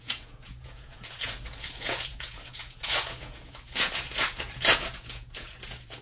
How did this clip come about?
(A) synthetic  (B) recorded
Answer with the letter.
A